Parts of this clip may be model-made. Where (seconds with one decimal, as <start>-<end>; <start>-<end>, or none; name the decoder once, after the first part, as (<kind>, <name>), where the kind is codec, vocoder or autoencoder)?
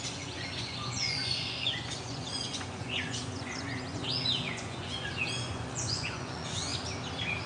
0.0-6.7 (vocoder, Vocos)